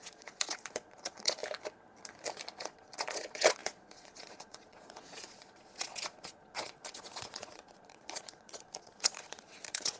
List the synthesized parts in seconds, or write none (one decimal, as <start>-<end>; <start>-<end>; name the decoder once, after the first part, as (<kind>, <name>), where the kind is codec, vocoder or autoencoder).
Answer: 0.0-1.4 (vocoder, Vocos); 2.6-10.0